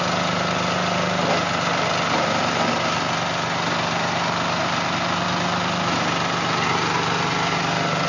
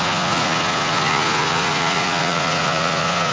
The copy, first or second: second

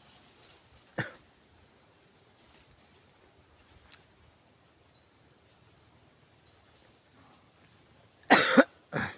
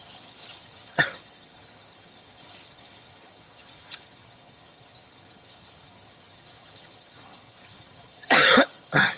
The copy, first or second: second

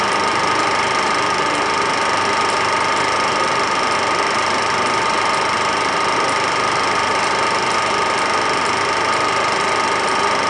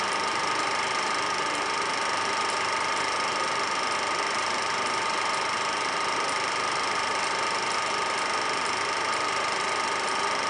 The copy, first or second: second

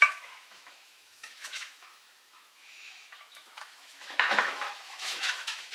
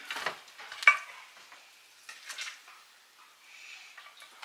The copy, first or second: first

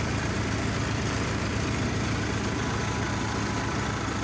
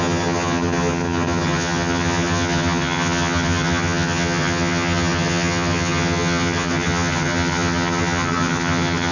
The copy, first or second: second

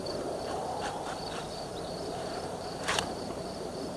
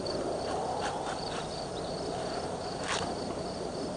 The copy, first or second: first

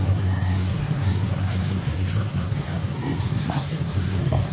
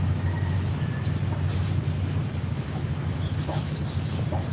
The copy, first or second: first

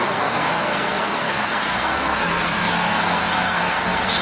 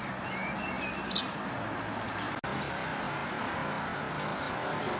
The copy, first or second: first